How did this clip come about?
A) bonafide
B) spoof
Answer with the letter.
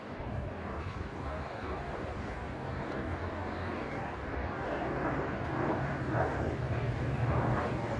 B